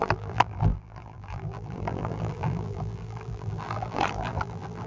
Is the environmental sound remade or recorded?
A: remade